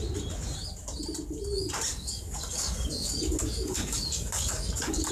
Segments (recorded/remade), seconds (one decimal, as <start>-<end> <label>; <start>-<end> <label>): 0.0-1.9 recorded; 1.9-5.1 remade